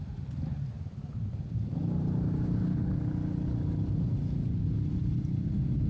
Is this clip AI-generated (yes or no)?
no